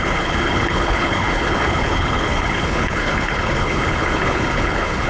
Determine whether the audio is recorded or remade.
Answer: remade